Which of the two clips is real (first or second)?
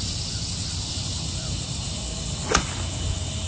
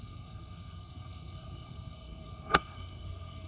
first